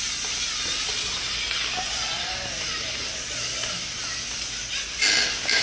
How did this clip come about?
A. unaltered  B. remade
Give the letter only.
A